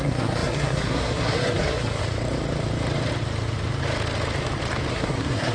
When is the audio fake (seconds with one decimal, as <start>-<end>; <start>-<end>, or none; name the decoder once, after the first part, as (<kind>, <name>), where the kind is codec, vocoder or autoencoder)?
0.0-2.0 (codec, SNAC); 4.9-5.5